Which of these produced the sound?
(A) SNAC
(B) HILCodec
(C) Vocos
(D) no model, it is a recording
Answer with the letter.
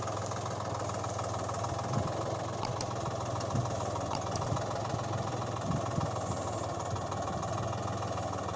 D